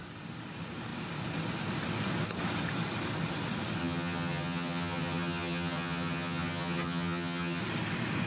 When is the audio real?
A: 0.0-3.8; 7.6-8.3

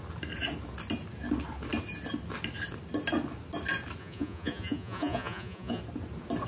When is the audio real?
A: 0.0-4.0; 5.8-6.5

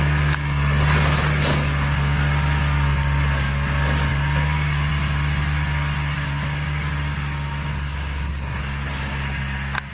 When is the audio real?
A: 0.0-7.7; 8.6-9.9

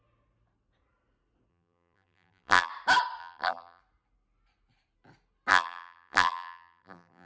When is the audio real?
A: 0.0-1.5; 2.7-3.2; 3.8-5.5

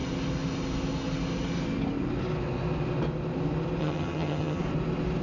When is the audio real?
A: 0.0-3.8; 4.6-5.2